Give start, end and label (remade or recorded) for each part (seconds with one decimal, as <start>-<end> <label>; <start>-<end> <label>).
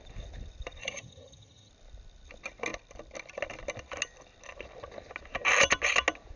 0.0-0.8 recorded; 0.8-1.7 remade; 1.7-6.4 recorded